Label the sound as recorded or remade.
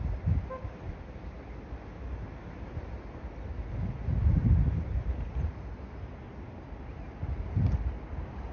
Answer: recorded